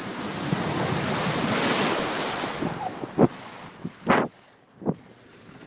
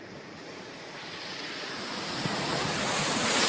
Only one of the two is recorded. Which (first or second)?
first